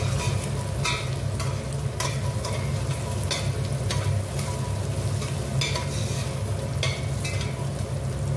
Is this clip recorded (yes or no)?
yes